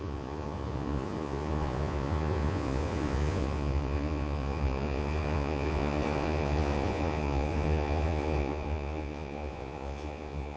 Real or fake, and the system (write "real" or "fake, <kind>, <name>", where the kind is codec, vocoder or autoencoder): fake, vocoder, Vocos